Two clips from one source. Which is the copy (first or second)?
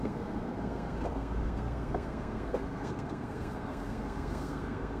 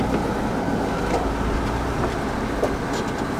first